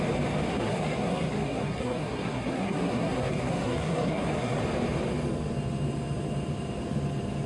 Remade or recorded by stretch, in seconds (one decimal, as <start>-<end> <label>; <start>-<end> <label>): 0.0-0.5 recorded; 0.5-4.6 remade; 4.6-7.5 recorded

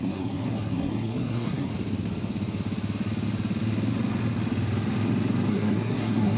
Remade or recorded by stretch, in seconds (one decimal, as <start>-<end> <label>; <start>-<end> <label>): 0.0-1.7 remade; 1.7-5.5 recorded; 5.5-6.4 remade

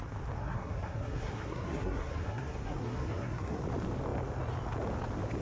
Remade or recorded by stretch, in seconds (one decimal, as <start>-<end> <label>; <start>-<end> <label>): 0.0-0.4 recorded; 0.4-3.6 remade; 3.6-5.4 recorded

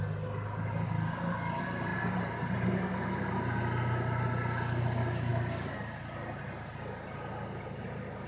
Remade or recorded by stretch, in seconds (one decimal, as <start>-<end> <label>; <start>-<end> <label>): 0.0-8.3 recorded